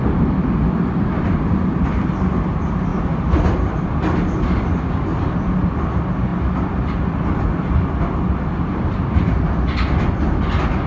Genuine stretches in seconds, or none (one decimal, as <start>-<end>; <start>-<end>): 0.0-10.9